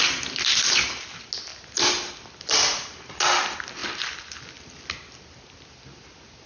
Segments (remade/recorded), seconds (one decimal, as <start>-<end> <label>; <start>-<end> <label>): 0.0-6.5 recorded